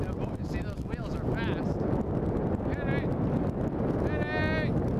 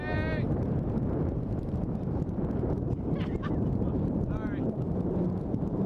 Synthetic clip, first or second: second